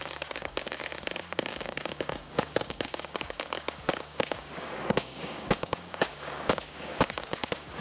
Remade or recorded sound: remade